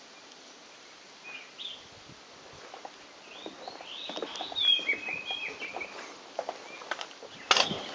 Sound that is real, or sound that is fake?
real